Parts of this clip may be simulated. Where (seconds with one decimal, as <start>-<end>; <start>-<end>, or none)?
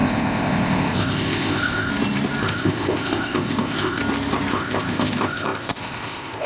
0.0-1.9; 2.4-4.0; 4.5-6.5